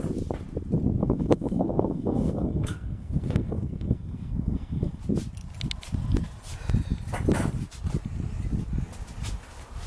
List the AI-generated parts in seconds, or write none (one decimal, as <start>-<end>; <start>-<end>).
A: 1.0-5.0